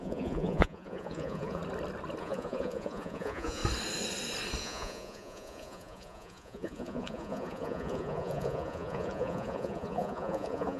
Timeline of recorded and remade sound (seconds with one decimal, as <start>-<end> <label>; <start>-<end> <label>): 0.0-1.6 remade; 1.6-2.2 recorded; 2.2-3.6 remade; 3.6-4.6 recorded; 4.6-10.8 remade